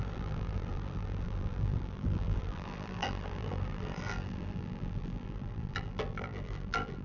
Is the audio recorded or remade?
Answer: remade